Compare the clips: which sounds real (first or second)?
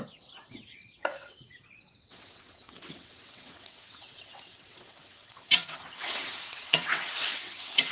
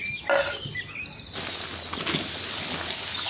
second